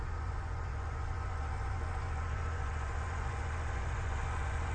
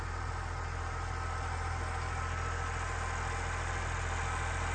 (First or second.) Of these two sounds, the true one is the second